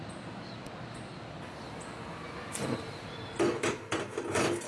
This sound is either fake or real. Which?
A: real